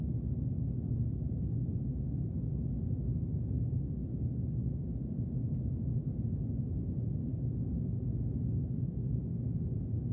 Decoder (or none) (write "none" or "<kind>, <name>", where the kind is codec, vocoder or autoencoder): none